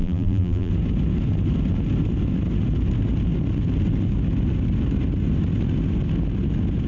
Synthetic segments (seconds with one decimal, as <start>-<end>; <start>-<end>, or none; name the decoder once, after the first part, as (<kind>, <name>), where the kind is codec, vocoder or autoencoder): 0.0-0.7 (vocoder, BigVGAN v2)